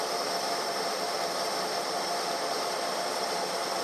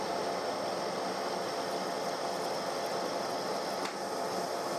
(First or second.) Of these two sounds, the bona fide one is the second